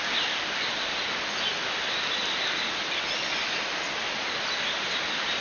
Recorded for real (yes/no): yes